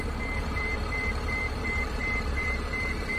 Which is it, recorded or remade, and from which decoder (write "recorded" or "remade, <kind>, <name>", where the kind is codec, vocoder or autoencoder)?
remade, vocoder, BigVGAN v2